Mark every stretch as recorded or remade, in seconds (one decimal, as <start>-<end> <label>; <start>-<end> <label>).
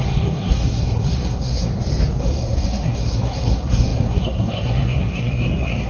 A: 0.0-1.7 remade; 1.7-2.2 recorded; 2.2-5.9 remade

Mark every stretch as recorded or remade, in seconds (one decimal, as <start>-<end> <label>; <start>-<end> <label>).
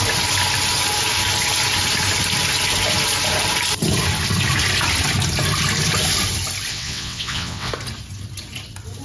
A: 0.0-6.7 recorded; 6.7-7.7 remade; 7.7-9.0 recorded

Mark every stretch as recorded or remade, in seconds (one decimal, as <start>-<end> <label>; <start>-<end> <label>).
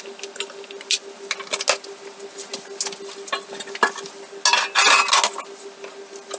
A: 0.0-6.4 recorded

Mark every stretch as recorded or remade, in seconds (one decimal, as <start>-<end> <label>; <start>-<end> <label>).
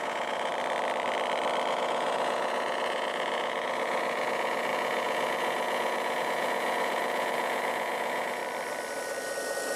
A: 0.0-0.5 remade; 0.5-1.7 recorded; 1.7-8.4 remade; 8.4-9.8 recorded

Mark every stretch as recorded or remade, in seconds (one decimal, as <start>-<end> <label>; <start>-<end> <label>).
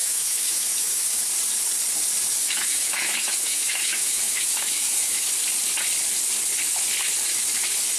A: 0.0-1.3 remade; 1.3-2.4 recorded; 2.4-5.3 remade; 5.3-8.0 recorded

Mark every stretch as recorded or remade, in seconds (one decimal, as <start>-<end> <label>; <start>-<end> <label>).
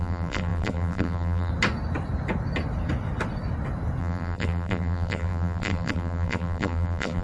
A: 0.0-1.5 remade; 1.5-4.0 recorded; 4.0-7.2 remade